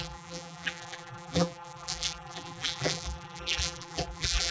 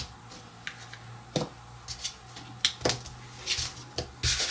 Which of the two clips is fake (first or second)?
first